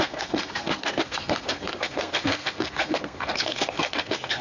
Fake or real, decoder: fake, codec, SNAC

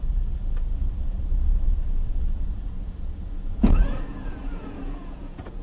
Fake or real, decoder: fake, vocoder, Vocos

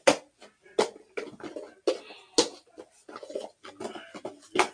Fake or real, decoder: real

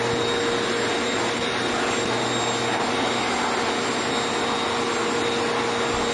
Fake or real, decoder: real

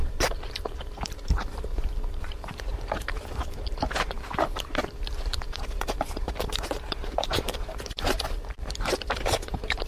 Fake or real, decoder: fake, vocoder, BigVGAN v2